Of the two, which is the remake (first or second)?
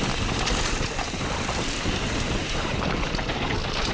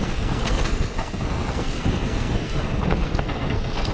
second